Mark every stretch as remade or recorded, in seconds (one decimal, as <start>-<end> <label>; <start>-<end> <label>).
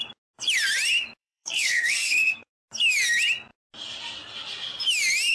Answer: 0.0-1.2 recorded; 1.2-2.5 remade; 2.5-5.3 recorded